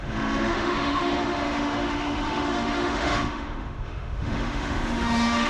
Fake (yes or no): yes